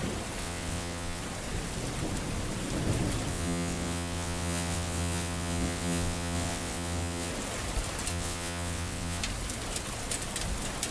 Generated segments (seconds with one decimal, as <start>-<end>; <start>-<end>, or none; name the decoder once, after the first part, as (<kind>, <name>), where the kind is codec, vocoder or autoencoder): 0.4-1.2 (vocoder, WaveNeXt); 3.3-7.3; 8.1-9.2